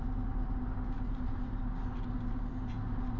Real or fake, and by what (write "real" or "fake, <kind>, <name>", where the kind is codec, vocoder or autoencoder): real